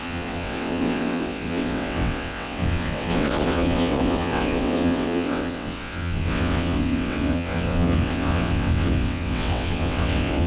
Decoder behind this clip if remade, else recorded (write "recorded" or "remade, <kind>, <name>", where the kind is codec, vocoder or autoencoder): remade, vocoder, WaveNeXt